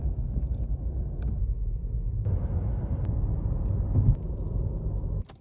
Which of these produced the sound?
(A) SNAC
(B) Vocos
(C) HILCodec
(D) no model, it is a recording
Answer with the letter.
D